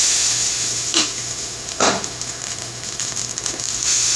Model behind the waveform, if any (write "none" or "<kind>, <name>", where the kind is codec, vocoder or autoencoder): autoencoder, DAC-VAE